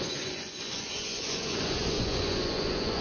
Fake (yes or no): yes